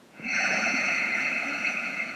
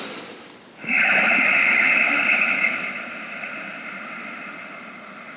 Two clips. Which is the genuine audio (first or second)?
second